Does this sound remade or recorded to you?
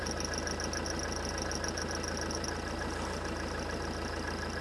recorded